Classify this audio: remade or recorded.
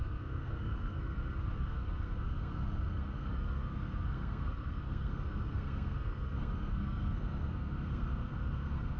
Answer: remade